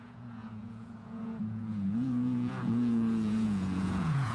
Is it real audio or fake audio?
fake